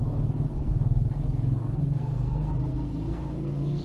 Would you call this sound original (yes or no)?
no